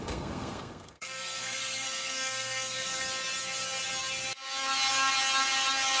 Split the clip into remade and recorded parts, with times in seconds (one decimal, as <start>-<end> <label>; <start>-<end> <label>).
0.0-3.1 remade; 3.1-6.0 recorded